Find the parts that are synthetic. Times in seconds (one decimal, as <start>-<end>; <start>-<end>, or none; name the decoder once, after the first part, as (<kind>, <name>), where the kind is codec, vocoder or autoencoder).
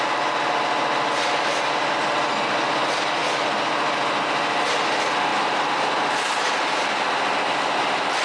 none